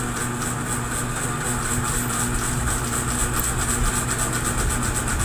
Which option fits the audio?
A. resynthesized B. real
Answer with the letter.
B